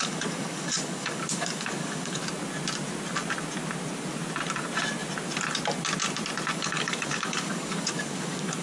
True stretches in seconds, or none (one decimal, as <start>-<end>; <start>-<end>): 2.2-6.5

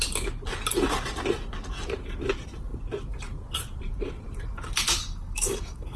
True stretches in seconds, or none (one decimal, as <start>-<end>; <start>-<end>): 0.0-5.0

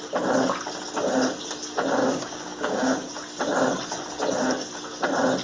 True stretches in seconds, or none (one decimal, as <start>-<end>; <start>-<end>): 0.0-2.0; 3.1-5.4